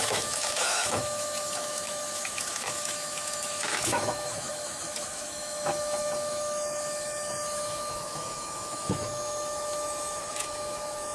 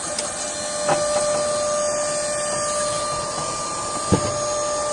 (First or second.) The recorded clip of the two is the second